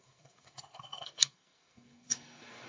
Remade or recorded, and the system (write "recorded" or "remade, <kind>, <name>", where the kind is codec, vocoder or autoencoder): remade, codec, SNAC